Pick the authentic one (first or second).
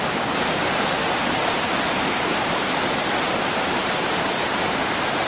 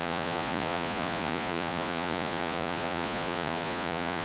first